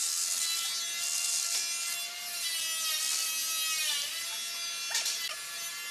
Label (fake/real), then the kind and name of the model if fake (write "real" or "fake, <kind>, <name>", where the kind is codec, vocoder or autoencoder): real